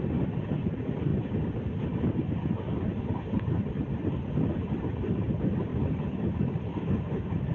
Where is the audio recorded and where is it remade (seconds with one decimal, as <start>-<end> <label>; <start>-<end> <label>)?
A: 0.0-6.7 recorded; 6.7-7.5 remade